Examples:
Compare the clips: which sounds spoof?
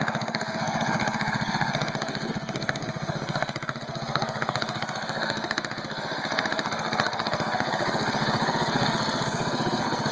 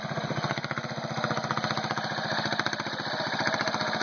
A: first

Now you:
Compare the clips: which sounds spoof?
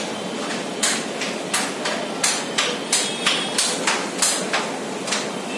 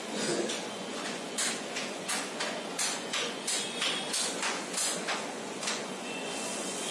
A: second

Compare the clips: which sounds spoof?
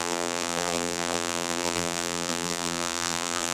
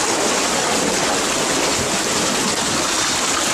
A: first